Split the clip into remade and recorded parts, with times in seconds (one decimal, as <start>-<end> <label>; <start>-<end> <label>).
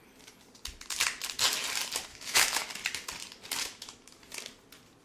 0.0-2.1 recorded; 2.1-2.7 remade; 2.7-3.6 recorded; 3.6-4.2 remade; 4.2-5.0 recorded